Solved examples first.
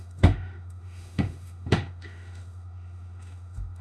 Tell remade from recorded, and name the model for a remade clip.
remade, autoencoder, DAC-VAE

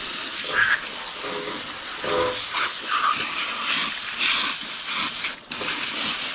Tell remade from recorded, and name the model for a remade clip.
recorded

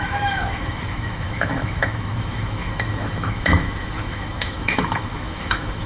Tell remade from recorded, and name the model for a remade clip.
remade, autoencoder, DAC-VAE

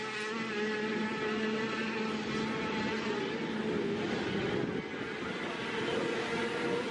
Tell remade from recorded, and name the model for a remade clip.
recorded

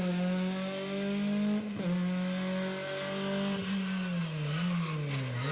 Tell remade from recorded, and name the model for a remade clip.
recorded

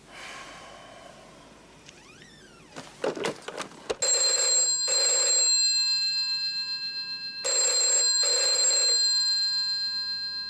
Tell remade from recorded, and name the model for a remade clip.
recorded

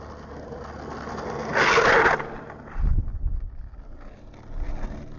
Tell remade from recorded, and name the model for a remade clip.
recorded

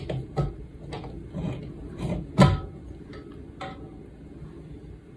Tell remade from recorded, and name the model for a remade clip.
recorded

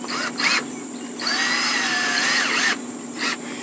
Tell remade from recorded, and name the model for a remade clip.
recorded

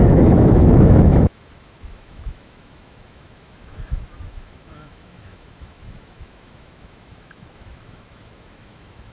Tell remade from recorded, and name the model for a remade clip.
remade, autoencoder, DAC-VAE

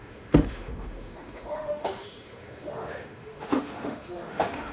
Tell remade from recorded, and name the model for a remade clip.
remade, autoencoder, DAC-VAE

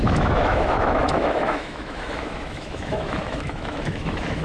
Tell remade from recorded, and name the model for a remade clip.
remade, autoencoder, DAC-VAE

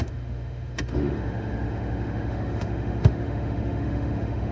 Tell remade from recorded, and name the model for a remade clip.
remade, autoencoder, DAC-VAE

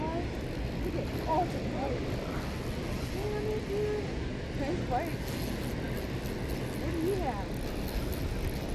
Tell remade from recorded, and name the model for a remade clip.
recorded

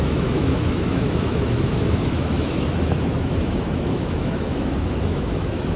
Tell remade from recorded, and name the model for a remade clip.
remade, autoencoder, DAC-VAE